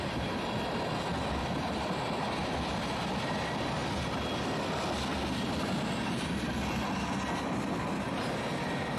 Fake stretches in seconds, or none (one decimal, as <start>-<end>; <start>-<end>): none